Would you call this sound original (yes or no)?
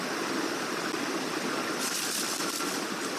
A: yes